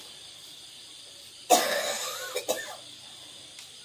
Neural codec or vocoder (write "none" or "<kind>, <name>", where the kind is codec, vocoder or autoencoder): none